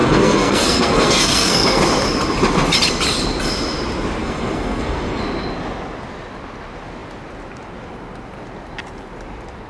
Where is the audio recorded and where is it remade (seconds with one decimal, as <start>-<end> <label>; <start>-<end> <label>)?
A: 0.0-1.8 remade; 1.8-4.2 recorded; 4.2-5.2 remade; 5.2-9.7 recorded